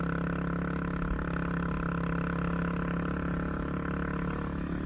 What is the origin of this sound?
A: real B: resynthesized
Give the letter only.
A